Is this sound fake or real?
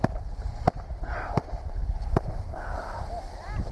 real